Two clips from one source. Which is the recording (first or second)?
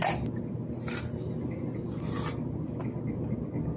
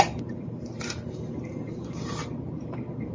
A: first